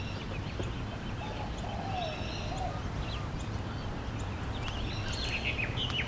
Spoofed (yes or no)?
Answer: no